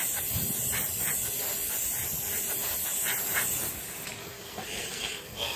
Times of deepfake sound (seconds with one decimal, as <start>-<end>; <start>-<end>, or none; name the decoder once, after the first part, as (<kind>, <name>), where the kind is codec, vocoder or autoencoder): 4.2-5.6 (codec, SNAC)